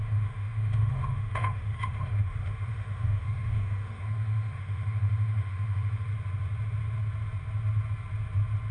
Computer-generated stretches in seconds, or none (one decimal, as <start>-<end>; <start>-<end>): 0.0-6.1